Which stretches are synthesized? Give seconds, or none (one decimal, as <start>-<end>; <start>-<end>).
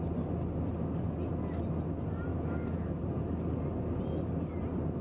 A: 2.3-3.0